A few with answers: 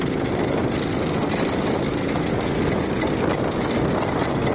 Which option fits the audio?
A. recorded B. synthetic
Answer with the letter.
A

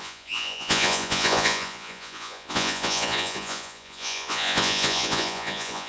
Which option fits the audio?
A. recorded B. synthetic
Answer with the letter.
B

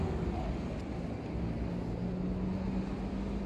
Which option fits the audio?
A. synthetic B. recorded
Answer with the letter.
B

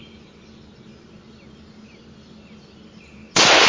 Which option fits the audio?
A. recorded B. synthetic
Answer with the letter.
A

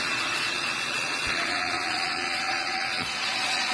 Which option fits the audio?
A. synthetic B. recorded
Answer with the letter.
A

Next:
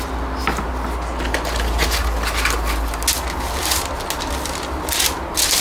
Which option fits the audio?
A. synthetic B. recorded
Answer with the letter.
B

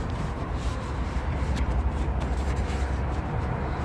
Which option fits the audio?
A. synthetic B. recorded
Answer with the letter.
A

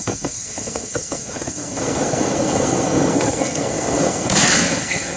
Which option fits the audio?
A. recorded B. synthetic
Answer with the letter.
B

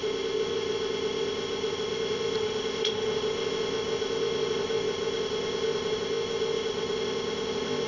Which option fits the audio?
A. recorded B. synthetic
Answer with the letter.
B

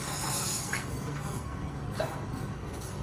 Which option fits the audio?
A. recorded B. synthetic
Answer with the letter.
B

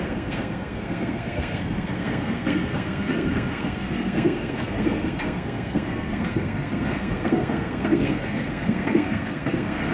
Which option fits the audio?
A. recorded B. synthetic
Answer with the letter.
B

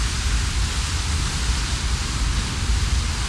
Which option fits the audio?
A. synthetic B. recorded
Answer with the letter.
B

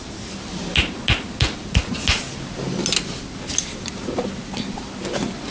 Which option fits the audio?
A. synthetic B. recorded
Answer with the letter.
B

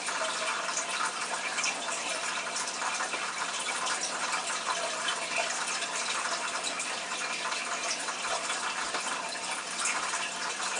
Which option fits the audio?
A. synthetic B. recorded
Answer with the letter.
A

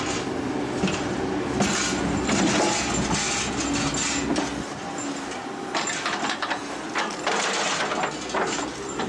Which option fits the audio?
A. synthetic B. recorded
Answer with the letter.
B